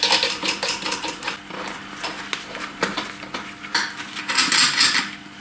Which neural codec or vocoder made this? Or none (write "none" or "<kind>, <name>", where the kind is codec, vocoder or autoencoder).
none